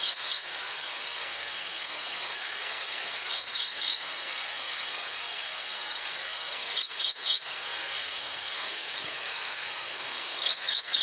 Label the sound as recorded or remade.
remade